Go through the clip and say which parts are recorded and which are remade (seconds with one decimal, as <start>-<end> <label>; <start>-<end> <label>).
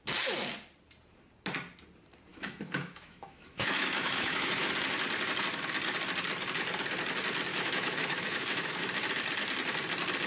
0.0-2.3 recorded; 2.3-4.7 remade; 4.7-7.5 recorded; 7.5-8.8 remade; 8.8-10.3 recorded